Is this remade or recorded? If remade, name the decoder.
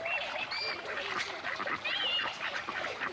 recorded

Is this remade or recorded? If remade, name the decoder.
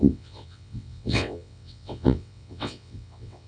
remade, vocoder, WaveNeXt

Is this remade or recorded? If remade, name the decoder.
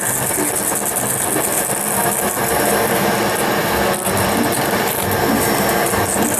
recorded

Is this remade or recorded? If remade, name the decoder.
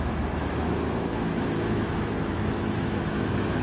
remade, autoencoder, DAC-VAE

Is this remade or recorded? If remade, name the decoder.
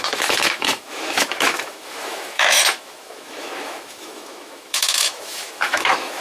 remade, autoencoder, DAC-VAE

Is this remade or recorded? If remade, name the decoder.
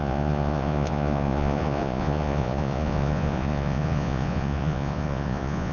remade, vocoder, Vocos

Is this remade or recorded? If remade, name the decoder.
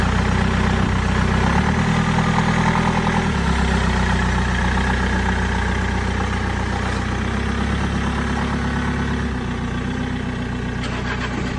recorded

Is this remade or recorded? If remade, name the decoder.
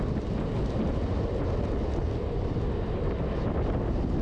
recorded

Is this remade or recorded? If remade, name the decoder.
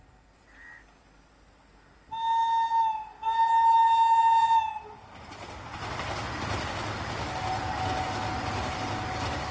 recorded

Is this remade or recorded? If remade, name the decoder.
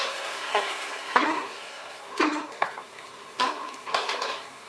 remade, codec, SNAC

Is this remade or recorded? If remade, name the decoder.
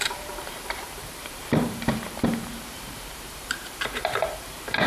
remade, vocoder, BigVGAN v2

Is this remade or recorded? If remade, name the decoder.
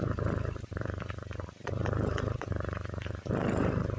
remade, vocoder, BigVGAN v2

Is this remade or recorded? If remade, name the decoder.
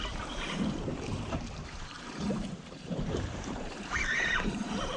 remade, vocoder, BigVGAN v2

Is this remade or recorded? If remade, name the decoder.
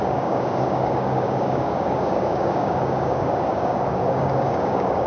remade, codec, DAC